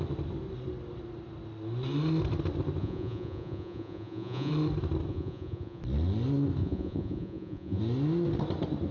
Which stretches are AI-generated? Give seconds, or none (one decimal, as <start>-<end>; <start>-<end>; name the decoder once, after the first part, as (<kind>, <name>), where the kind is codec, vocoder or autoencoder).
2.8-4.5 (vocoder, Vocos); 5.1-5.8; 6.6-7.8